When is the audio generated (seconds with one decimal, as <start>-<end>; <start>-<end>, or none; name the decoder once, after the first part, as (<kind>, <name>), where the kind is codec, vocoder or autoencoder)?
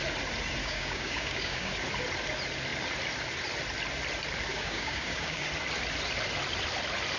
0.6-1.7 (codec, DAC); 4.5-5.5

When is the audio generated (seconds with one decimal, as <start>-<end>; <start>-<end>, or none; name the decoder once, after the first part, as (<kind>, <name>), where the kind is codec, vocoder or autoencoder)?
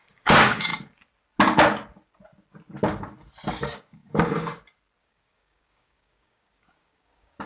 0.0-0.7 (codec, DAC); 3.5-4.0; 5.0-7.5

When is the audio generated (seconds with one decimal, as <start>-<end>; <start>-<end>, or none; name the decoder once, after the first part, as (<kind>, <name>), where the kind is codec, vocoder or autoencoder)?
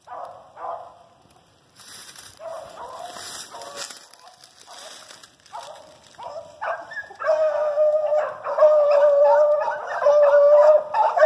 none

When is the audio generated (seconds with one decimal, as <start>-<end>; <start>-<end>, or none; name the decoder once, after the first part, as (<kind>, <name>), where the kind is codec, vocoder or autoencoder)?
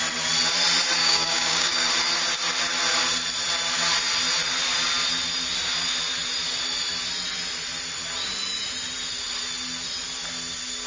1.0-1.9 (codec, DAC)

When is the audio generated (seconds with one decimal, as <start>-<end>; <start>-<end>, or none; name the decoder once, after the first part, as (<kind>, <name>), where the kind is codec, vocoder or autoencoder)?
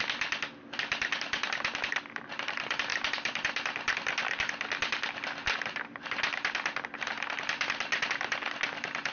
none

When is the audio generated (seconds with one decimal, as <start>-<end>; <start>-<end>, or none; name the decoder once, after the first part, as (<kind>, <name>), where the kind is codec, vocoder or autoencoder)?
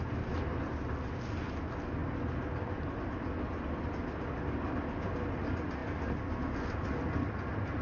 none